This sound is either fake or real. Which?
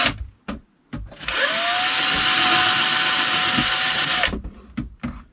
real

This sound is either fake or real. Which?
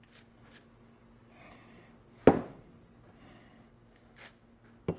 real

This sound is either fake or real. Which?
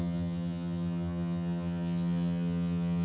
fake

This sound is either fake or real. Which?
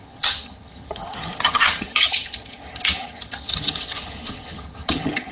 fake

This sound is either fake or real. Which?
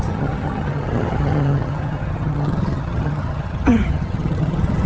fake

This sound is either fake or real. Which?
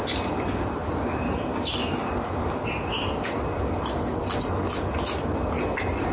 real